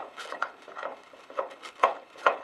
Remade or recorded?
remade